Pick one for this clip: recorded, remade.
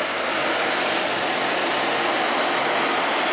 recorded